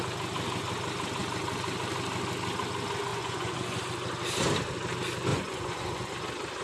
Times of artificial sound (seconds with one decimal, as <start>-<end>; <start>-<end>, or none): 3.1-3.8; 5.3-6.1